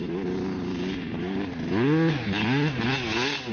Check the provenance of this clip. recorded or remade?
recorded